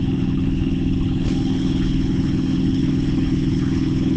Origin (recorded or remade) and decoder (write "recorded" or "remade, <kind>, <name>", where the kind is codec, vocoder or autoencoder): remade, codec, HILCodec